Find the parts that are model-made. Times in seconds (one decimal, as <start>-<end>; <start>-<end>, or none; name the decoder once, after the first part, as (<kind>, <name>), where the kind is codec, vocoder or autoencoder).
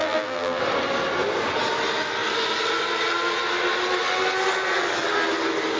0.0-0.6 (vocoder, BigVGAN v2)